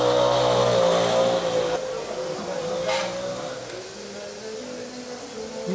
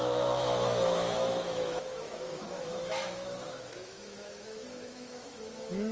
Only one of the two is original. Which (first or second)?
first